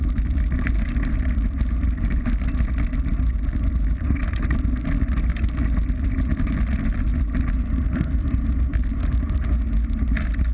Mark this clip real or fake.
real